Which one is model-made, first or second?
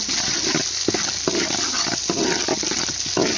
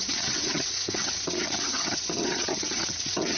second